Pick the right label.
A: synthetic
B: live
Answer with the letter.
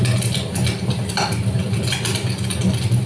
B